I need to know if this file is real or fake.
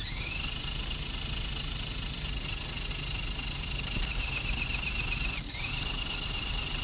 real